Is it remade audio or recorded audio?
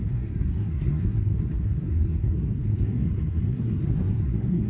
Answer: remade